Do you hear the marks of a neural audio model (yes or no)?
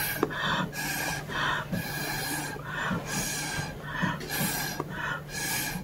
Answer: no